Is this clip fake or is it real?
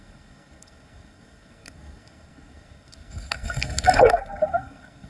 fake